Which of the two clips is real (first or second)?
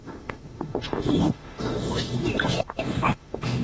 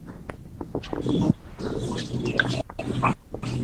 second